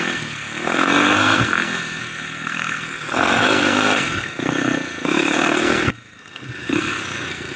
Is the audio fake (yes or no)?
yes